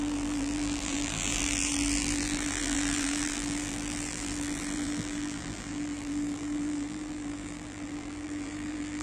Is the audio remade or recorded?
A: remade